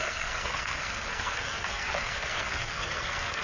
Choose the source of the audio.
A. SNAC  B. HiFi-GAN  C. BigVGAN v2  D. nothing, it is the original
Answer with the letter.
A